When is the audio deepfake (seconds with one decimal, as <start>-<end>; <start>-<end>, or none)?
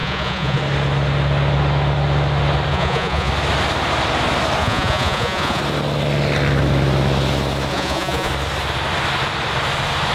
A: 0.0-0.6; 2.7-3.3; 4.6-5.6; 7.7-8.3